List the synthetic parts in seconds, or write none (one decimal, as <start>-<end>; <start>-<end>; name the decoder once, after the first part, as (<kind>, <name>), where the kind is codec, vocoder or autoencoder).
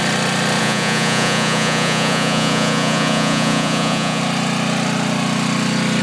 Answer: 0.6-4.2 (vocoder, Vocos)